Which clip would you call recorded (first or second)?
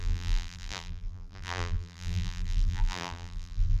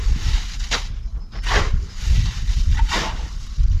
second